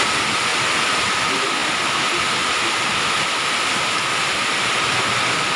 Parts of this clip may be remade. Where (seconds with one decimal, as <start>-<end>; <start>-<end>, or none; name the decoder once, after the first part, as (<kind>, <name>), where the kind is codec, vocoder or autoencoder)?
none